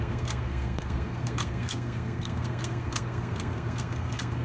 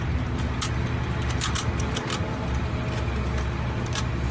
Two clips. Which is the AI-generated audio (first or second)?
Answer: first